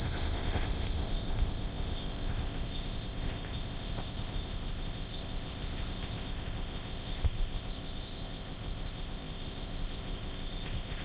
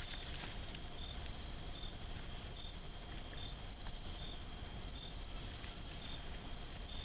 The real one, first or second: second